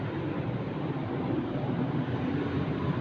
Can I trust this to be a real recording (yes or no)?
no